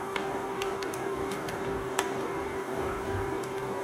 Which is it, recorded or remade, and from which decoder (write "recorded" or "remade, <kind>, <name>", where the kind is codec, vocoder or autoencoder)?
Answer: remade, codec, DAC